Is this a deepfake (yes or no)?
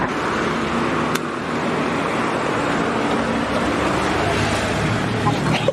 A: no